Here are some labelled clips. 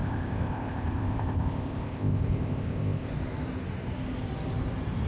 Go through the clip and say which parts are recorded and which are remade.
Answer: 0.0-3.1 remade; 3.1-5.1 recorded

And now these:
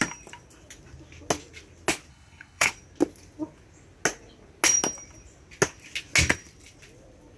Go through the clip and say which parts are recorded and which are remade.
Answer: 0.0-2.1 recorded; 2.1-2.7 remade; 2.7-7.4 recorded

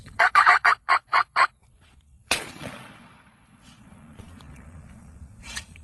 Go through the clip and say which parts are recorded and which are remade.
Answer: 0.0-5.8 remade